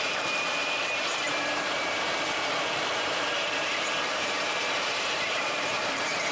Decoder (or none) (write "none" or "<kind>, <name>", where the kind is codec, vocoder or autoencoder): vocoder, BigVGAN v2